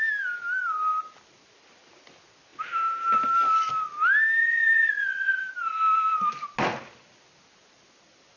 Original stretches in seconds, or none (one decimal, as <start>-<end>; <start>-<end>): 0.0-4.4; 5.4-8.4